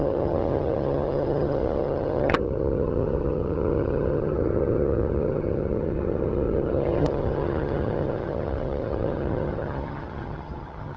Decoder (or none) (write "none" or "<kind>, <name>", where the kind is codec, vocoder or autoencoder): vocoder, HiFi-GAN